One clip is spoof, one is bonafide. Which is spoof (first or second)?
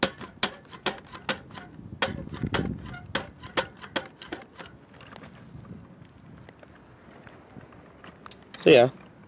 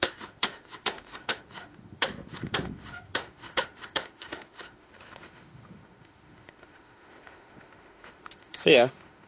second